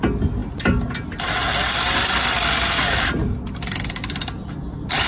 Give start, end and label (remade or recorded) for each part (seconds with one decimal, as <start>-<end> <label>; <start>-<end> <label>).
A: 0.0-5.1 recorded